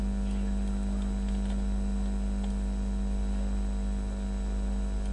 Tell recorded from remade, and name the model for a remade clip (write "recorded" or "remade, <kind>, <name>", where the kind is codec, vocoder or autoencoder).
recorded